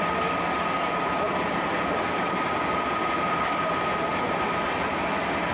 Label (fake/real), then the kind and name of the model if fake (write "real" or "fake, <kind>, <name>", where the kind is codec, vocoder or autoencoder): real